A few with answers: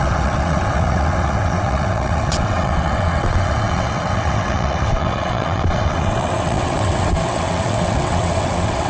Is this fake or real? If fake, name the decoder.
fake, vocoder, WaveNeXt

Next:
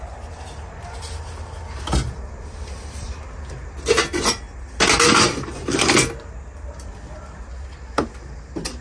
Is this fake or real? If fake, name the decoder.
real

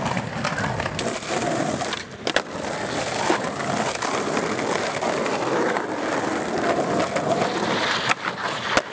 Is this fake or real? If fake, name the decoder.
fake, vocoder, BigVGAN v2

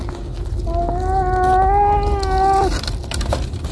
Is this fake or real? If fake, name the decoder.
real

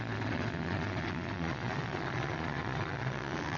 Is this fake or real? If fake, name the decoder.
fake, vocoder, Vocos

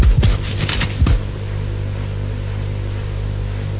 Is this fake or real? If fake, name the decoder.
real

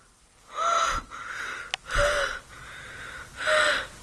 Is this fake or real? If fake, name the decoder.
real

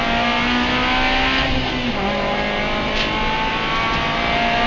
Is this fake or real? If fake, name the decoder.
real